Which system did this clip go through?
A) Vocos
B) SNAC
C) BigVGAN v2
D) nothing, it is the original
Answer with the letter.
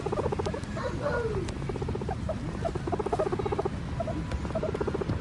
D